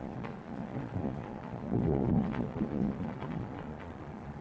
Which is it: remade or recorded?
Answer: remade